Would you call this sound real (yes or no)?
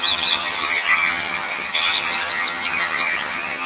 no